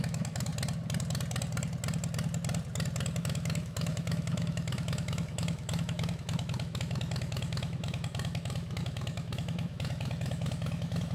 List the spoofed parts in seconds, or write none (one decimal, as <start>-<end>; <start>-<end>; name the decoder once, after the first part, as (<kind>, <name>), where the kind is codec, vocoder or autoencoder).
0.0-0.5 (autoencoder, DAC-VAE); 3.2-11.1